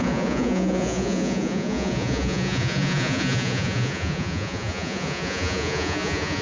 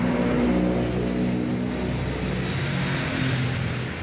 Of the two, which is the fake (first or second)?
first